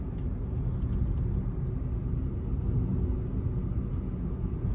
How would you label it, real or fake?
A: real